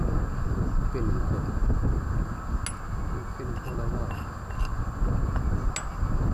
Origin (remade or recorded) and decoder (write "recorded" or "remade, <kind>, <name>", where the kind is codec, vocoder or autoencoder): recorded